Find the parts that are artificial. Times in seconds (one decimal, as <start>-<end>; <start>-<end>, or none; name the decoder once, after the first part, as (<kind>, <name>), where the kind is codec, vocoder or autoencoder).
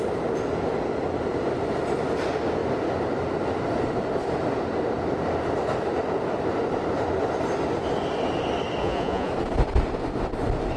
8.8-9.3 (vocoder, Vocos)